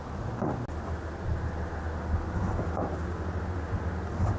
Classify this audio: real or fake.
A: real